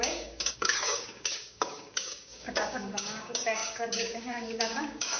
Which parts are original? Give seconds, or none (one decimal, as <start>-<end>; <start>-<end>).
none